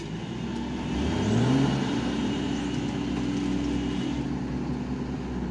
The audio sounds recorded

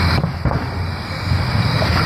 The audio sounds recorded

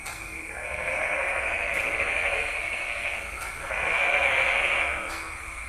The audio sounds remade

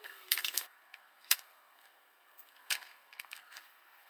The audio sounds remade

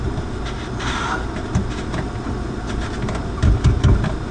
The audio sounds recorded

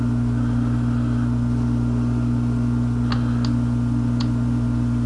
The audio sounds recorded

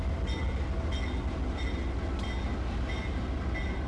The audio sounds recorded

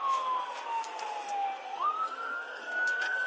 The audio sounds remade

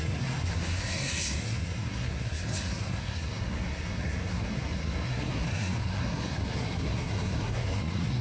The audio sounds remade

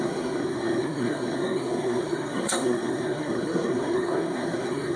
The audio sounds remade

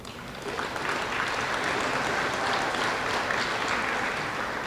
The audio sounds recorded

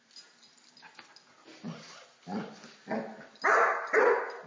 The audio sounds recorded